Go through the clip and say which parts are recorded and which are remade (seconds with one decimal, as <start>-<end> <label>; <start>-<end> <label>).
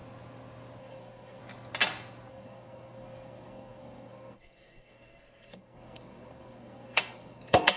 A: 0.0-0.8 recorded; 0.8-1.4 remade; 1.4-2.3 recorded; 2.3-7.8 remade